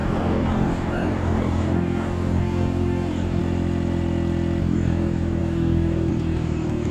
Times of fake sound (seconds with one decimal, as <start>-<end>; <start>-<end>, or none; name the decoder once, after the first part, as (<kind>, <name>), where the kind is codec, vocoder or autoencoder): 0.0-3.4 (codec, DAC); 4.6-6.9